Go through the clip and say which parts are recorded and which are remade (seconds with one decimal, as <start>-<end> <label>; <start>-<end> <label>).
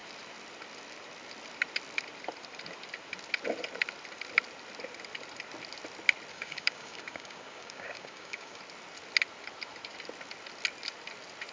0.0-6.3 recorded; 6.3-8.6 remade; 8.6-11.5 recorded